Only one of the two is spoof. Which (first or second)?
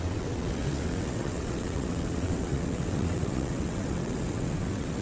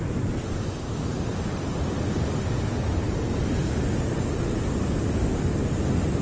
first